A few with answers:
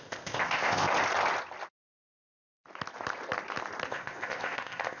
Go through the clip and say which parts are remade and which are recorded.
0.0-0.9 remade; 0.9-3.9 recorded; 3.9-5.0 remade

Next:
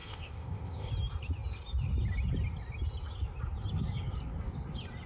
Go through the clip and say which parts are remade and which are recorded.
0.0-0.9 remade; 0.9-5.1 recorded

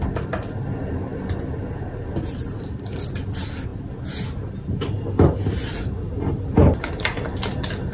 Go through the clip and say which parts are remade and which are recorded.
0.0-7.9 recorded

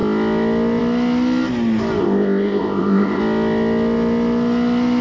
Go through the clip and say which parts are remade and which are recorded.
0.0-2.0 recorded; 2.0-3.2 remade; 3.2-5.0 recorded

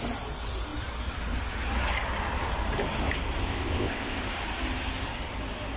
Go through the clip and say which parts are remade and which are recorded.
0.0-3.4 recorded; 3.4-4.2 remade; 4.2-5.8 recorded

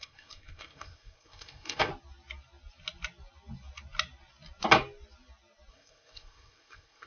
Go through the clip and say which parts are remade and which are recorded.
0.0-1.9 remade; 1.9-5.7 recorded; 5.7-7.1 remade

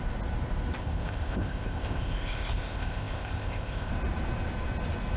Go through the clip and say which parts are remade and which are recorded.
0.0-0.8 recorded; 0.8-3.9 remade; 3.9-5.2 recorded

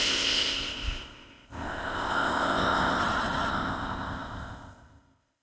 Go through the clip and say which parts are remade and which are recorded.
0.0-3.0 remade; 3.0-3.5 recorded; 3.5-5.4 remade